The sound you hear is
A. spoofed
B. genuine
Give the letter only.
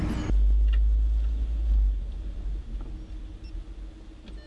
B